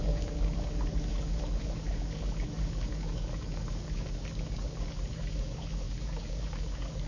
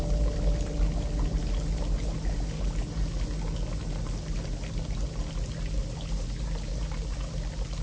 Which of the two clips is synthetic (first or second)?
first